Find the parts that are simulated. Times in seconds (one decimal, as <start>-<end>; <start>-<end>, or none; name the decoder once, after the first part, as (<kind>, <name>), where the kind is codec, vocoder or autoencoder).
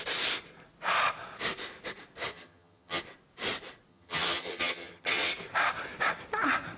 2.3-3.0 (vocoder, HiFi-GAN); 3.9-5.3